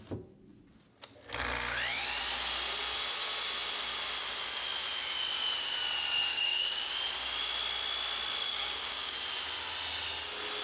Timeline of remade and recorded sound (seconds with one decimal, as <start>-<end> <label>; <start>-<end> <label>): 0.0-6.3 recorded; 6.3-6.9 remade; 6.9-8.4 recorded; 8.4-9.2 remade; 9.2-10.6 recorded